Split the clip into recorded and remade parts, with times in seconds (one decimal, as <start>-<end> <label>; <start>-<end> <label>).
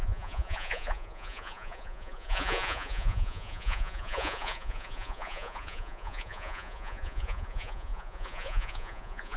0.0-9.4 remade